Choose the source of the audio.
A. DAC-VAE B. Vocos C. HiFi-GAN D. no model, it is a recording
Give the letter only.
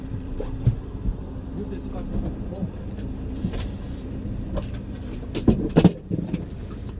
D